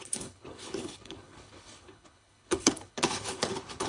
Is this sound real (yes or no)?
no